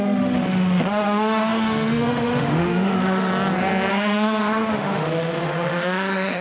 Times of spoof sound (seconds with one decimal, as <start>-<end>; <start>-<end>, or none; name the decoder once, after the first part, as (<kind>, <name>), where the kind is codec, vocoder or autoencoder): 0.0-3.3 (autoencoder, DAC-VAE); 3.9-6.4